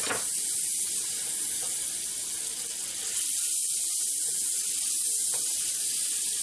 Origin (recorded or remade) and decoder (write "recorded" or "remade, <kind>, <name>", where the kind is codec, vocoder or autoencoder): recorded